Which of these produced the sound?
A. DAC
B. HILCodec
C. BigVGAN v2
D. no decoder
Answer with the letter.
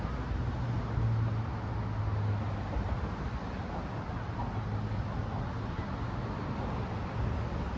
D